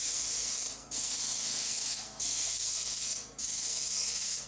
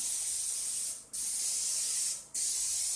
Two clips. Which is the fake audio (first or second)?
first